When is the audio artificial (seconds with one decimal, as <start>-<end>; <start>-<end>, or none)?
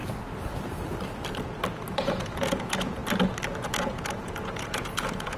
2.0-3.0; 3.6-5.4